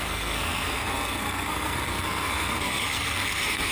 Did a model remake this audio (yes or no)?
yes